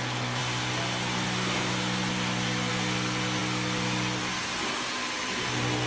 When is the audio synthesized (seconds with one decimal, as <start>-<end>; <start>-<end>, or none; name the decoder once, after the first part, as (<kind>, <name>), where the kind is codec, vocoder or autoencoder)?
none